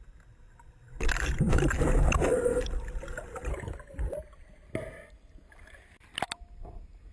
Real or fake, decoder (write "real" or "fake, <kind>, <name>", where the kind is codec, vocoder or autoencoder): real